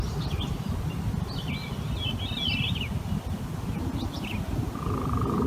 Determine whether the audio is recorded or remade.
recorded